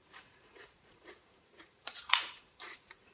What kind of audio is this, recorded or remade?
remade